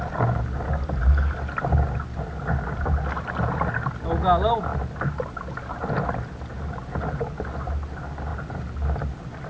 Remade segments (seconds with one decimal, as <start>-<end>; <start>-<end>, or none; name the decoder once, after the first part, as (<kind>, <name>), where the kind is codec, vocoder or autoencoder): none